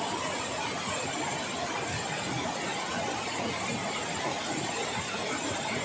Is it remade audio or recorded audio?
recorded